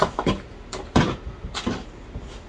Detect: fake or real real